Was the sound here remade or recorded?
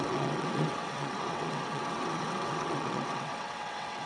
remade